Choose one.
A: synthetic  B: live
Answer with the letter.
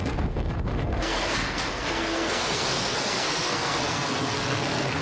A